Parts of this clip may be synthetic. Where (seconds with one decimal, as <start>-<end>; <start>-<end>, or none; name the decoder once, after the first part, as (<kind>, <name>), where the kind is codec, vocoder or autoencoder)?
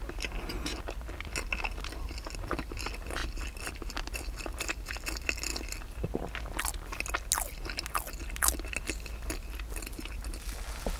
none